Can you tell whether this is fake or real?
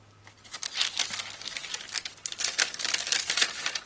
real